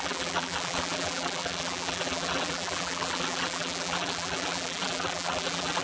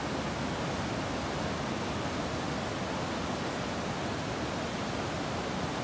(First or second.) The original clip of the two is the second